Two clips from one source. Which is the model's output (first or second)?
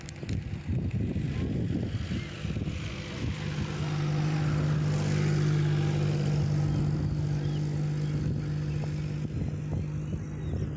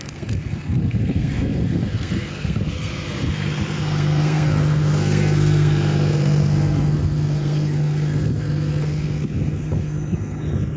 second